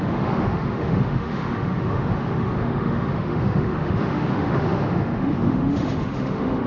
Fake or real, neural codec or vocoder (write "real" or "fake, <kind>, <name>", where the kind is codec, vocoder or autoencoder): fake, autoencoder, DAC-VAE